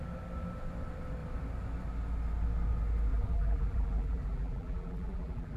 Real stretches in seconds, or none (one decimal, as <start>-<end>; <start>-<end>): 0.0-3.1